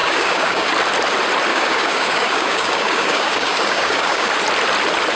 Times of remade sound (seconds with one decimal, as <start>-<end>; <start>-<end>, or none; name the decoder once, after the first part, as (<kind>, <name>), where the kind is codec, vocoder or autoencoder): 0.0-0.7 (codec, DAC); 1.5-4.3